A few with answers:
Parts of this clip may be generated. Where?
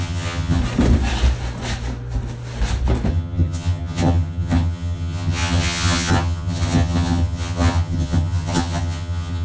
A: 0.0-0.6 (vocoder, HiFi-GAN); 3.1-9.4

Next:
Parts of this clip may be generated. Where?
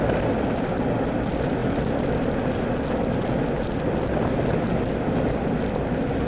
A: none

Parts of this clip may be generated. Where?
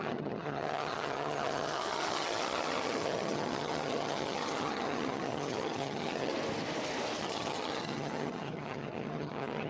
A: 0.0-6.3 (vocoder, HiFi-GAN); 7.2-9.7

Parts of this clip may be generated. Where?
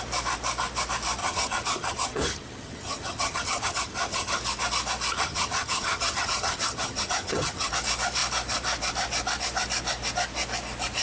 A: 1.2-4.4 (vocoder, HiFi-GAN); 5.1-7.7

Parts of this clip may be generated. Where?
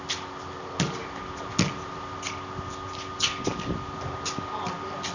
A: none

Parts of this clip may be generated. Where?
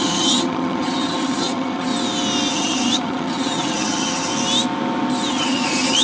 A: 0.0-1.9 (vocoder, HiFi-GAN); 2.5-4.3; 5.3-6.0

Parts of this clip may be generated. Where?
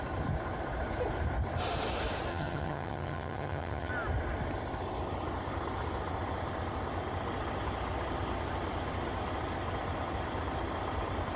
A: 2.3-3.9 (vocoder, HiFi-GAN)